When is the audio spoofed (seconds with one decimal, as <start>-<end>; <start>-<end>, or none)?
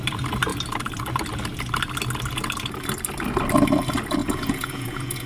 4.2-5.3